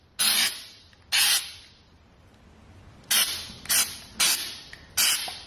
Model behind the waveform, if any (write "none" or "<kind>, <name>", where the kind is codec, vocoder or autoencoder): none